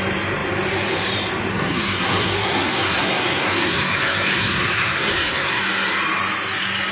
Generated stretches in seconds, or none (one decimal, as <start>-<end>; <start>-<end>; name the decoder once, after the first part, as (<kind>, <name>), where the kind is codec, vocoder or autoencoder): 1.5-5.6 (codec, SNAC)